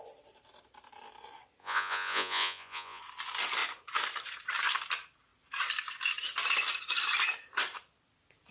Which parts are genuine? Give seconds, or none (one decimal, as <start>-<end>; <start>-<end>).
0.0-1.6; 3.0-8.5